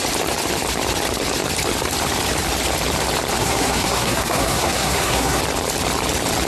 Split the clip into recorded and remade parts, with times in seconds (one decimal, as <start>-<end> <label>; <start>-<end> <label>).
0.0-3.4 recorded; 3.4-5.4 remade; 5.4-6.5 recorded